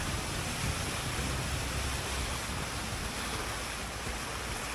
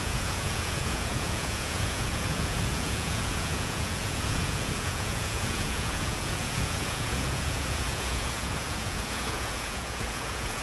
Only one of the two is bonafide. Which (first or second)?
first